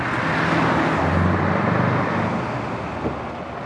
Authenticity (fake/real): real